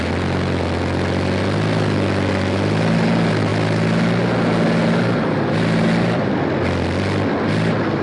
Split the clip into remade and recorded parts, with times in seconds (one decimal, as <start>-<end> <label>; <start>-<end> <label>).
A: 0.0-8.0 recorded